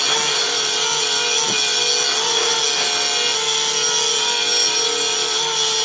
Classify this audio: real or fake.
real